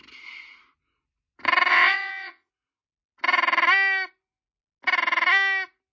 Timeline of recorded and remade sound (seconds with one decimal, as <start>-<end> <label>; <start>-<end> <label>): 0.0-1.7 recorded; 1.7-2.5 remade; 2.5-5.9 recorded